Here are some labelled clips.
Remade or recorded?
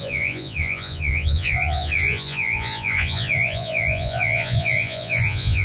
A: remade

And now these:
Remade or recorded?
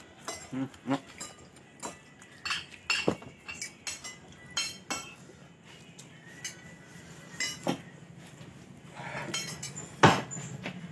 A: recorded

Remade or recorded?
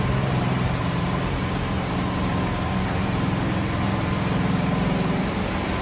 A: remade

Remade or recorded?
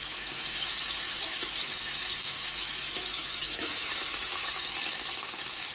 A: remade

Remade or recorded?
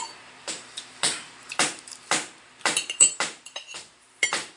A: remade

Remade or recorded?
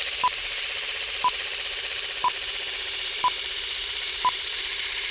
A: remade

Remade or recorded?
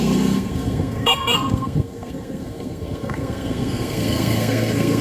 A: remade